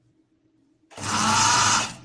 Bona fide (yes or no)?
yes